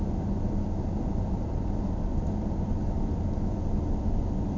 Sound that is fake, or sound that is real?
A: real